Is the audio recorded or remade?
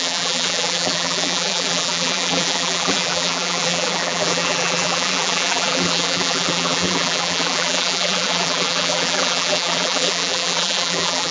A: remade